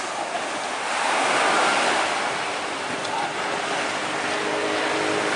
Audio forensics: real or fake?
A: real